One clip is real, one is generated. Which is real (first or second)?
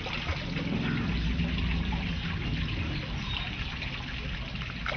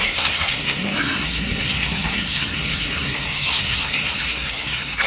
first